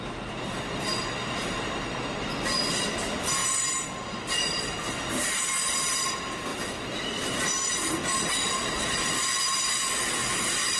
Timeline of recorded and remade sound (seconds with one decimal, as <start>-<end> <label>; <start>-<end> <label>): 0.0-3.4 remade; 3.4-4.2 recorded; 4.2-10.2 remade; 10.2-10.8 recorded